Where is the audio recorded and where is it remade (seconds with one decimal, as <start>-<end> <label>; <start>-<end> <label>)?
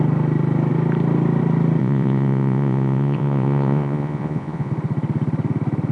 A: 0.0-1.8 recorded; 1.8-4.7 remade; 4.7-5.9 recorded